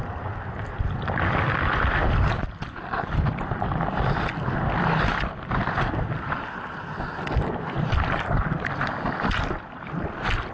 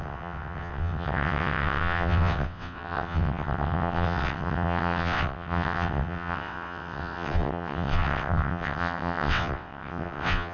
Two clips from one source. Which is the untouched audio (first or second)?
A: first